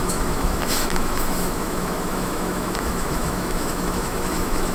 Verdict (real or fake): fake